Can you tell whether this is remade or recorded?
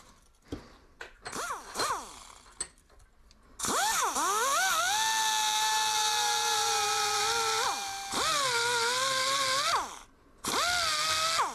recorded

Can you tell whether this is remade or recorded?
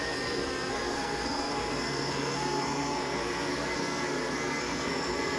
remade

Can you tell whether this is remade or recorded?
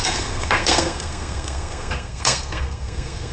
remade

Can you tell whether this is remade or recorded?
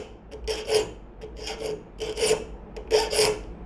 recorded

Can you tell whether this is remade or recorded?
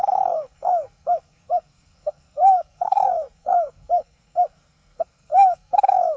remade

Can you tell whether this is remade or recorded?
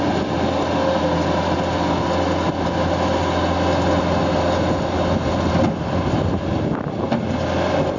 recorded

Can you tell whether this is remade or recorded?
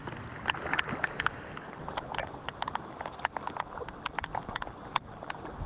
recorded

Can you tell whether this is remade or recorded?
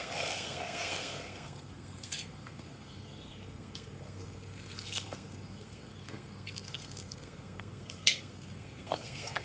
remade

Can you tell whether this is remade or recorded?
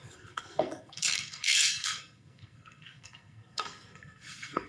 remade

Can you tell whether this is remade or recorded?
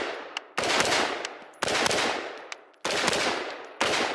recorded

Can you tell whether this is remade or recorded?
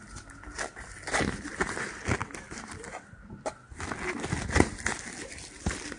recorded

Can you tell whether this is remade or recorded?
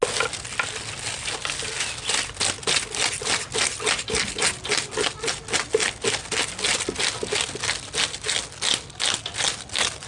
recorded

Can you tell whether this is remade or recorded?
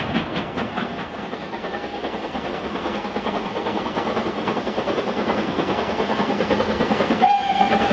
remade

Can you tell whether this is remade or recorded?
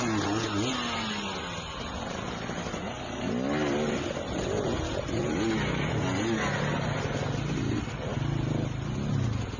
recorded